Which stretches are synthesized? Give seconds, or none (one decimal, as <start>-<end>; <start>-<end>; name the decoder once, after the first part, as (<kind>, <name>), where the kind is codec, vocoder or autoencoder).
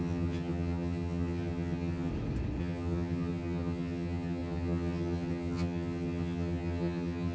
0.0-2.1 (vocoder, HiFi-GAN); 2.6-7.3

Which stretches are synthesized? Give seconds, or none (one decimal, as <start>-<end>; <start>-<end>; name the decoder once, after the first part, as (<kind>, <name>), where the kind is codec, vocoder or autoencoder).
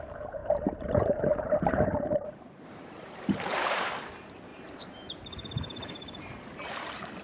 0.0-7.2 (vocoder, BigVGAN v2)